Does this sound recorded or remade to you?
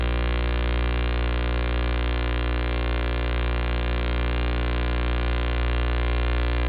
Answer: remade